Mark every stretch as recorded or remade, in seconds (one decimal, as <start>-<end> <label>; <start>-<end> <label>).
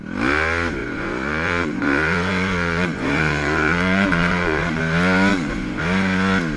0.0-0.8 recorded; 0.8-4.8 remade; 4.8-5.3 recorded; 5.3-5.8 remade; 5.8-6.6 recorded